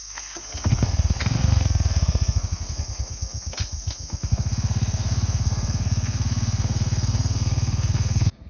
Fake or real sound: fake